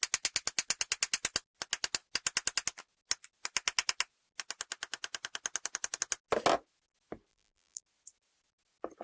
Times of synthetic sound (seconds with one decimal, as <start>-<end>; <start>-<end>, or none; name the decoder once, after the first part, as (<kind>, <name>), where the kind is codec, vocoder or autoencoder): 7.3-7.8 (vocoder, BigVGAN v2)